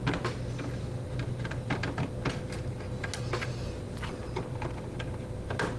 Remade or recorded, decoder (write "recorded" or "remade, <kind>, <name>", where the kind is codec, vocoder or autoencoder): recorded